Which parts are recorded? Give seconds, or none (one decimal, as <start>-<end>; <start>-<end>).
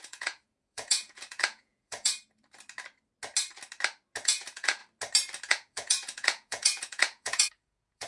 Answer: 2.1-4.2; 4.8-5.5